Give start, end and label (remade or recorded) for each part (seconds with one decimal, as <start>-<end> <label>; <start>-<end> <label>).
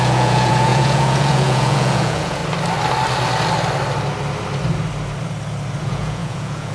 0.0-2.4 remade; 2.4-5.8 recorded; 5.8-6.7 remade